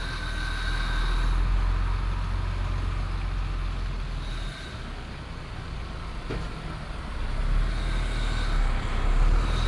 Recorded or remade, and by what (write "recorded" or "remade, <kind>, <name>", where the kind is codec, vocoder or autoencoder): recorded